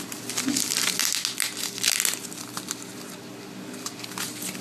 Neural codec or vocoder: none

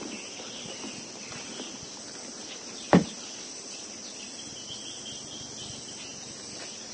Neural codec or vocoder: none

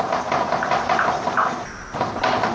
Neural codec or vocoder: none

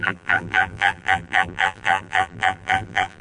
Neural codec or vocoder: vocoder, BigVGAN v2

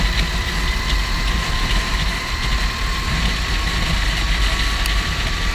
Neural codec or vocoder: none